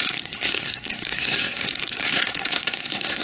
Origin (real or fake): fake